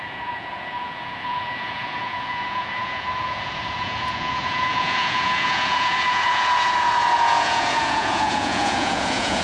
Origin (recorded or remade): remade